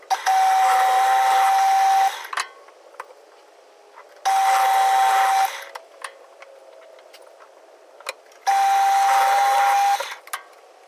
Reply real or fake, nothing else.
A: real